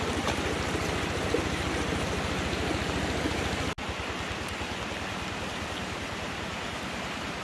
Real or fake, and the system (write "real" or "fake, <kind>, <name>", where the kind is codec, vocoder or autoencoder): real